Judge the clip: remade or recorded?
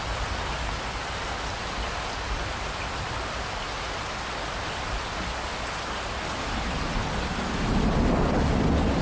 recorded